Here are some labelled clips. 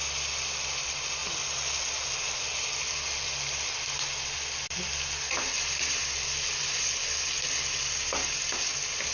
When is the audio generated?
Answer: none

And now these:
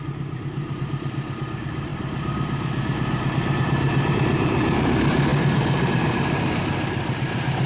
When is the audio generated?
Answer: 0.0-7.7 (vocoder, BigVGAN v2)

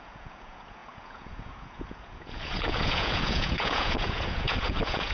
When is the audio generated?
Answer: 0.0-5.1 (vocoder, Vocos)

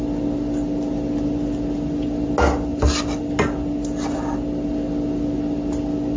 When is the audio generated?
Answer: none